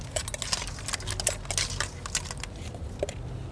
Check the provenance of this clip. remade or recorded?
recorded